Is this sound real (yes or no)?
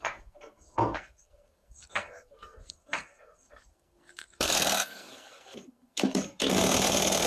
no